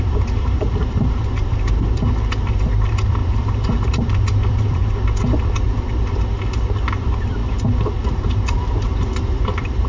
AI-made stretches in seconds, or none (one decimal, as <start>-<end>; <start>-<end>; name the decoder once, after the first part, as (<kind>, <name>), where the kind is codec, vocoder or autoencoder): 0.0-4.8 (vocoder, BigVGAN v2); 7.0-7.4; 8.1-9.9

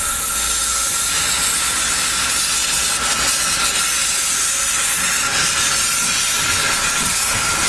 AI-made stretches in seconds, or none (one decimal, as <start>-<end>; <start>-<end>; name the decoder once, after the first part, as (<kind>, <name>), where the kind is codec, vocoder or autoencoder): none